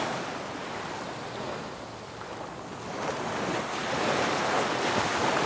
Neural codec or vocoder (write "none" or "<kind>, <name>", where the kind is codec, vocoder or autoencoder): none